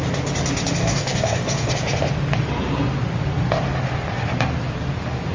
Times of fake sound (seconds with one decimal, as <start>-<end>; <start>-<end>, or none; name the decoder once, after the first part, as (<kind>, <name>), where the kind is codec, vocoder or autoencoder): 0.8-1.7 (codec, DAC)